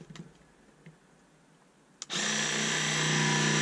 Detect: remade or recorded recorded